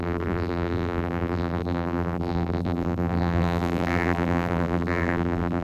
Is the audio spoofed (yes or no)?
yes